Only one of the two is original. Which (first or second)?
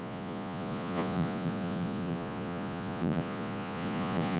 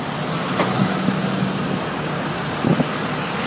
second